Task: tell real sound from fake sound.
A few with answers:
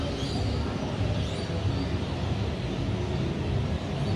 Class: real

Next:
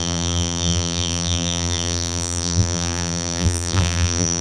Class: fake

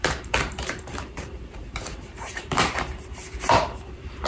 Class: fake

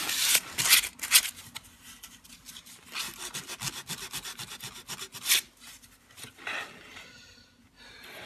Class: real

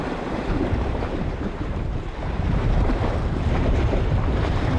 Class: fake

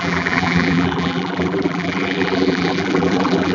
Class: fake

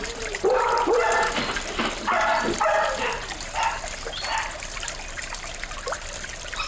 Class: fake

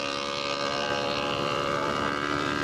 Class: fake